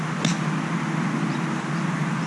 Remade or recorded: recorded